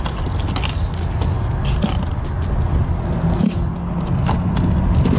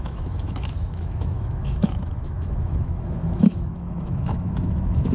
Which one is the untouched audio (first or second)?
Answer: first